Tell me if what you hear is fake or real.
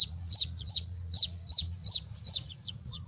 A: fake